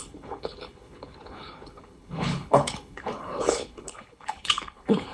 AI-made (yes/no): yes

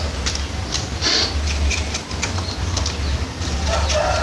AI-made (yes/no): no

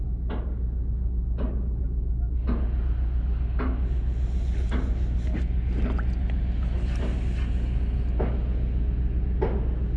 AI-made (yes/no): no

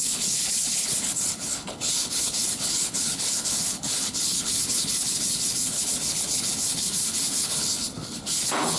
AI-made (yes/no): yes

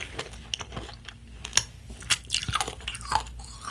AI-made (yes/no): no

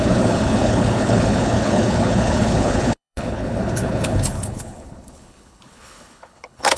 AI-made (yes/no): yes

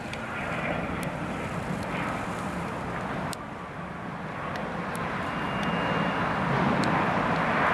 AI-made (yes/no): no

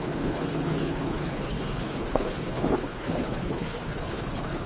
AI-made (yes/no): yes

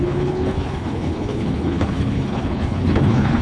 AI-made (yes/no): yes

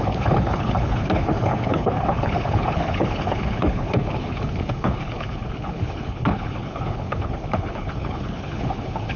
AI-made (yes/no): yes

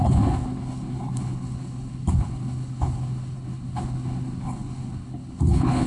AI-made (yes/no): yes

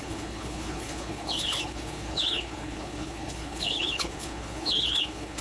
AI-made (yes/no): yes